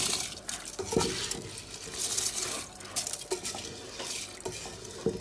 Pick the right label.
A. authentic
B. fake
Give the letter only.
A